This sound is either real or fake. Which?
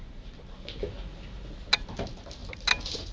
real